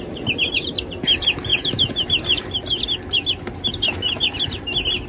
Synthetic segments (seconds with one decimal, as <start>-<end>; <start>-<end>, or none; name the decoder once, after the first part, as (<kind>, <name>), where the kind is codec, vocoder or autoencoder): none